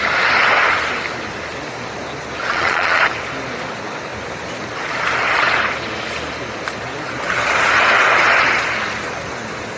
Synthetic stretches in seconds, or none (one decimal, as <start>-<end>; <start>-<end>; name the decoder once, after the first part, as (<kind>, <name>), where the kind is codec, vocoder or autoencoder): 2.5-3.0 (vocoder, Vocos)

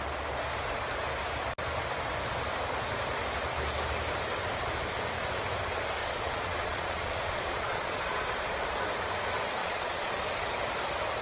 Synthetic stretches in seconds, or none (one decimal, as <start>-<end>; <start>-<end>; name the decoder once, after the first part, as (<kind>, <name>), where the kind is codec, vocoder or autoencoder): 6.0-8.0 (vocoder, Vocos); 9.6-10.1

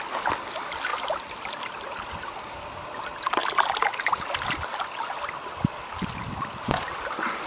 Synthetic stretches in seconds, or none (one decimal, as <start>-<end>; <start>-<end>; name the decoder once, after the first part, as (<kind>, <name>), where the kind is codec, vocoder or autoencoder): none